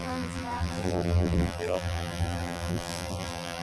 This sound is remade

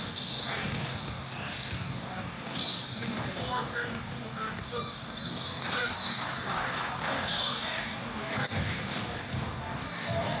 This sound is remade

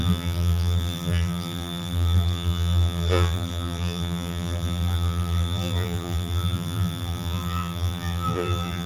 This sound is remade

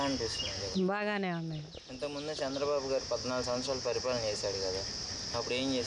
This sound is recorded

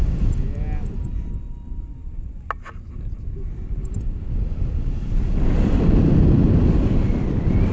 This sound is recorded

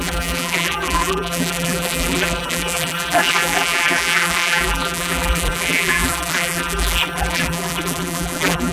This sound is remade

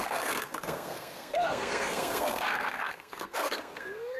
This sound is remade